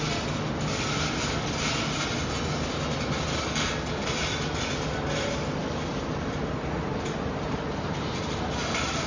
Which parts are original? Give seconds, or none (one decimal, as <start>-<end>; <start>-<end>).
0.0-5.6